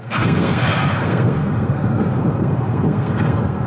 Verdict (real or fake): fake